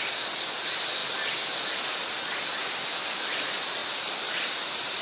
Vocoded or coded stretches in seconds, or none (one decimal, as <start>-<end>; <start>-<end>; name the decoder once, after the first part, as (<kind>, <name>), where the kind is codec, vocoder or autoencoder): none